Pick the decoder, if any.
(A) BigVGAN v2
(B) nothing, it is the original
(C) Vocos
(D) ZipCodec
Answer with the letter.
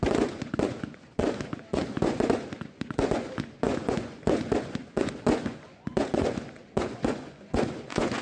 C